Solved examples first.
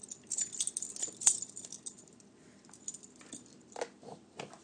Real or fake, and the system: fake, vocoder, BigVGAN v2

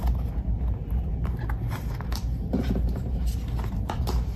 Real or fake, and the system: fake, vocoder, BigVGAN v2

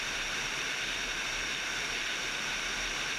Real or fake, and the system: fake, vocoder, BigVGAN v2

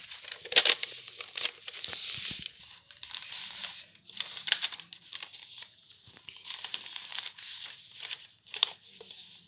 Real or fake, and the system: fake, vocoder, BigVGAN v2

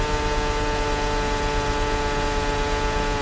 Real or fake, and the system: real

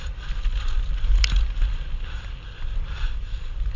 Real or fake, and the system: fake, vocoder, BigVGAN v2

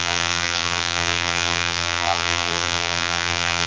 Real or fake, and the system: fake, vocoder, BigVGAN v2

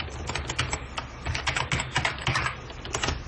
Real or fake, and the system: real